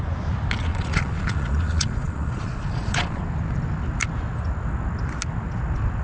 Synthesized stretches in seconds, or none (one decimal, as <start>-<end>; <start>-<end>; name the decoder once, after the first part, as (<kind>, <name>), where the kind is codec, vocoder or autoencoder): 0.6-3.2 (vocoder, Vocos)